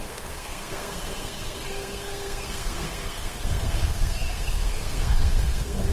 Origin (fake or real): fake